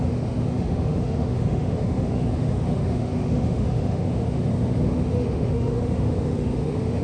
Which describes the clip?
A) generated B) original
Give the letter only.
A